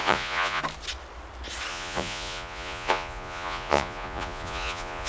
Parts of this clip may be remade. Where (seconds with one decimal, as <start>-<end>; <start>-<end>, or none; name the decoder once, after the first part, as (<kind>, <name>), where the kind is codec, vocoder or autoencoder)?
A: 0.0-0.6 (vocoder, Vocos); 1.7-5.1